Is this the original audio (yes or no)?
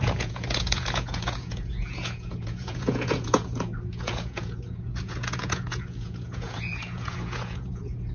no